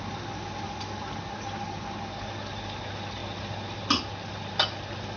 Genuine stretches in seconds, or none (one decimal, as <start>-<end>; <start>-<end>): 0.0-5.2